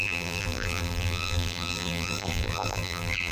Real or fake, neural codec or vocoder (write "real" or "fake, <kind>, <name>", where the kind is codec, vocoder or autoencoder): fake, vocoder, BigVGAN v2